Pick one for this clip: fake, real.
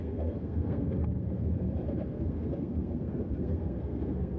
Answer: fake